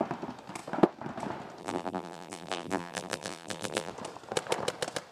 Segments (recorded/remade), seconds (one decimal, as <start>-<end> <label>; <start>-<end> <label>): 0.0-1.6 recorded; 1.6-3.9 remade; 3.9-5.1 recorded